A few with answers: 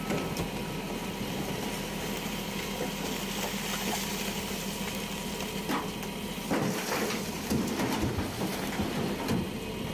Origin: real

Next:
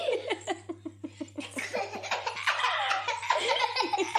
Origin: fake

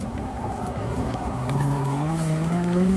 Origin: fake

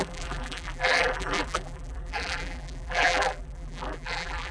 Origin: fake